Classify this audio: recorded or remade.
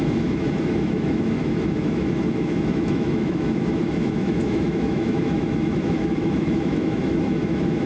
remade